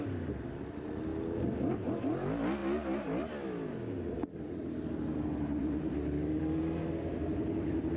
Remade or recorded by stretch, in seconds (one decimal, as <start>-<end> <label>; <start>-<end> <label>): 0.0-5.6 recorded; 5.6-6.4 remade; 6.4-8.0 recorded